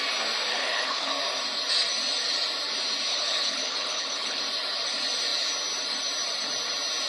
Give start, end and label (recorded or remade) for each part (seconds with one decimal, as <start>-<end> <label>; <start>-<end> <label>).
0.0-0.5 recorded; 0.5-1.1 remade; 1.1-3.1 recorded; 3.1-4.4 remade; 4.4-7.1 recorded